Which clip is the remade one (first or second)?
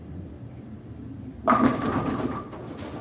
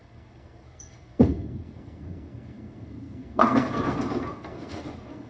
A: second